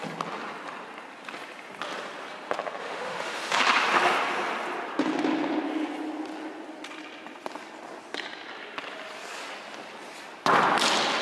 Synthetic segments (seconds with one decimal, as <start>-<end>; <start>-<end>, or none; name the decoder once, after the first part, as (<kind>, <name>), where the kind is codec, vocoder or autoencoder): 2.8-3.6 (autoencoder, DAC-VAE)